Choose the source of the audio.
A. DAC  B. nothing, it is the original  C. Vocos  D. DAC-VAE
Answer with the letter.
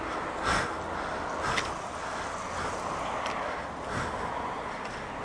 B